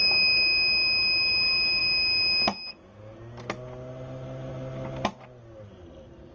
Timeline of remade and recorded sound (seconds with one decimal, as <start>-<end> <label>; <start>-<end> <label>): 0.0-6.3 recorded